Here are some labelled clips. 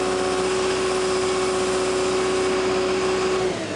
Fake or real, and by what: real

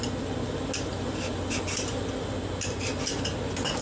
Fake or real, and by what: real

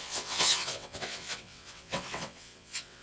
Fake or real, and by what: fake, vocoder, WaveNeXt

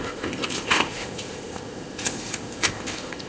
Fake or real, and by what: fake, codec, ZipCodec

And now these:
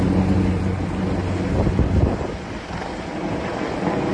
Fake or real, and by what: real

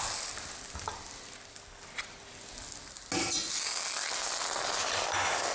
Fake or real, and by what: real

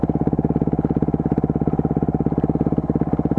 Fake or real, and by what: real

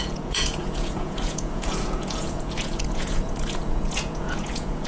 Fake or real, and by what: fake, vocoder, Vocos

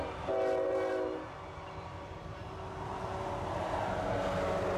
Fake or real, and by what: real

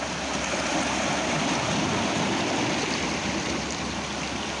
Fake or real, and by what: real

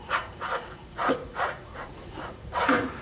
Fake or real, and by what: fake, vocoder, Vocos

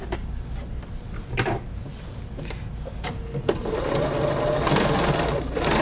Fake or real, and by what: real